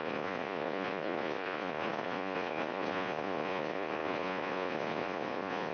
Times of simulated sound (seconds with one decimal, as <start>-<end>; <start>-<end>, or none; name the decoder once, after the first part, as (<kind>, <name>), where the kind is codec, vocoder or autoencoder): 0.0-5.7 (vocoder, Vocos)